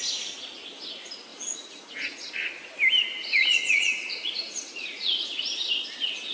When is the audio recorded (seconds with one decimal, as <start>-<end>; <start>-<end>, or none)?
0.0-1.3; 2.3-3.2; 5.4-6.3